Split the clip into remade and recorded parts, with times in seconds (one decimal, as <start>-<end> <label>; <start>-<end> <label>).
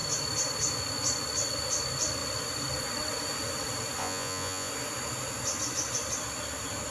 0.0-4.0 recorded; 4.0-4.7 remade; 4.7-6.9 recorded